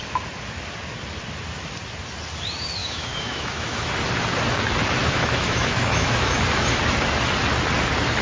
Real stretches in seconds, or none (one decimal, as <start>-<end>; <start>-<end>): 0.0-2.8; 3.9-5.0; 6.4-8.2